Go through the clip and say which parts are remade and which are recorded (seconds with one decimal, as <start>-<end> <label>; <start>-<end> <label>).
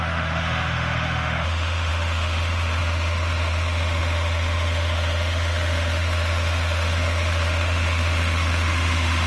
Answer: 0.0-9.3 remade